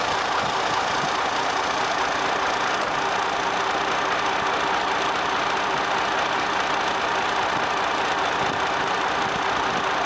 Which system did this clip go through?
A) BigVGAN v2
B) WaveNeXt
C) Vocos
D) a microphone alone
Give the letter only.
D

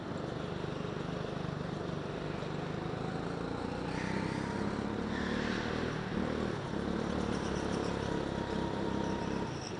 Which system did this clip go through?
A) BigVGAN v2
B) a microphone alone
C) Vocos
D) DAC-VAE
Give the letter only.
B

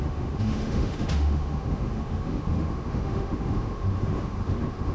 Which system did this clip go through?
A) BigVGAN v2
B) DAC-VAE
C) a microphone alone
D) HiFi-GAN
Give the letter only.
B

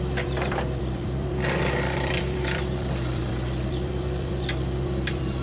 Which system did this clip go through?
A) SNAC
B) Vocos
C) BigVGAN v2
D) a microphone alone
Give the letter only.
C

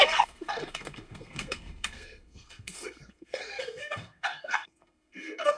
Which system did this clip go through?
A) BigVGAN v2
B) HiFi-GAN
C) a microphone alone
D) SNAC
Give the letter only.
D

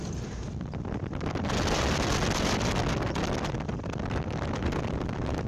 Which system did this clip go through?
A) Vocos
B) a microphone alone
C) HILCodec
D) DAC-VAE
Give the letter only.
B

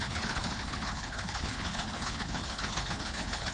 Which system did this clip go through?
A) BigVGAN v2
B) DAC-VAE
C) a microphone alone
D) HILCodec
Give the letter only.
D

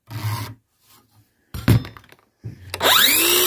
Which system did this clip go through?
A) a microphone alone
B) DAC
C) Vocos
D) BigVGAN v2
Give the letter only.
A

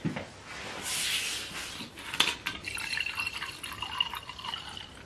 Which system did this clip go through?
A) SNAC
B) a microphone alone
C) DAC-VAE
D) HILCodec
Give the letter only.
B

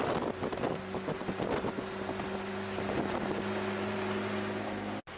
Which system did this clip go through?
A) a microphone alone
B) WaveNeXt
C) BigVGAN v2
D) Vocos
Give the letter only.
A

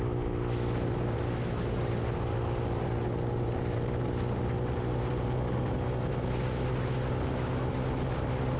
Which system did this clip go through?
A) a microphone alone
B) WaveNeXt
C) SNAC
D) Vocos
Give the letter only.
A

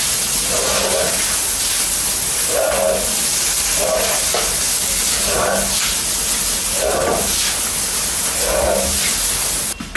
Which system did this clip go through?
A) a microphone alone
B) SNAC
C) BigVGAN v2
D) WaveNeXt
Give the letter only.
A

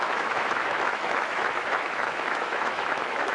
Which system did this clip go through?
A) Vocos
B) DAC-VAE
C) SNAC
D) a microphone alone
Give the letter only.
B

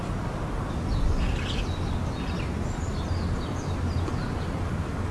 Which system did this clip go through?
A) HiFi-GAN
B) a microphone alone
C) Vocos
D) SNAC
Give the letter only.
B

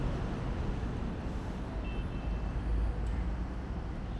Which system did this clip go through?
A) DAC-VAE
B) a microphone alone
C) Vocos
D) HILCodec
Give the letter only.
B